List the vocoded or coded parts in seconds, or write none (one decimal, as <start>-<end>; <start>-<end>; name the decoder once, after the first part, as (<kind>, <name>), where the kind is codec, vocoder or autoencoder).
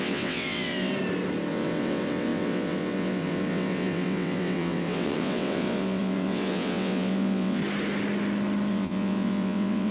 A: 0.0-0.9 (vocoder, WaveNeXt); 1.5-7.6; 8.7-9.9